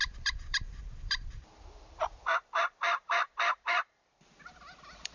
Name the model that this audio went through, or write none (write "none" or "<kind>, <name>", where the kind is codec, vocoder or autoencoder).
vocoder, BigVGAN v2